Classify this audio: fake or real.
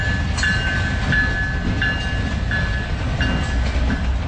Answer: real